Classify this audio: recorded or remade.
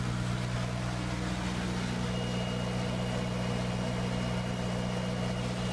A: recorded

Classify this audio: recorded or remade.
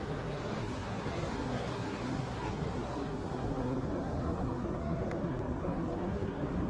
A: remade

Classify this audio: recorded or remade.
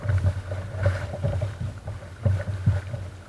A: recorded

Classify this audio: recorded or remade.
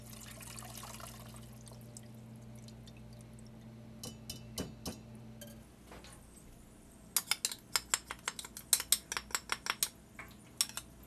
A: recorded